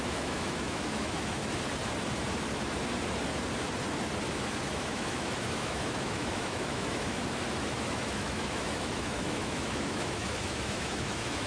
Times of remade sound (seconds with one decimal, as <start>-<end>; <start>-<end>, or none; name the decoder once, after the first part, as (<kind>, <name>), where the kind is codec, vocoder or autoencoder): 0.0-1.4 (autoencoder, DAC-VAE); 4.3-7.2; 7.7-11.5